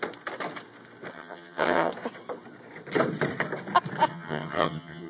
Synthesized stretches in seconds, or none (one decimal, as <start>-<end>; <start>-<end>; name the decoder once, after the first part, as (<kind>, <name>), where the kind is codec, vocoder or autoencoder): 1.1-1.9 (vocoder, HiFi-GAN); 4.1-5.1